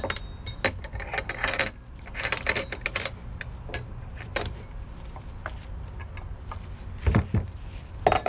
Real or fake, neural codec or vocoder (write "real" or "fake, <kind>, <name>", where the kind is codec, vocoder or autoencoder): real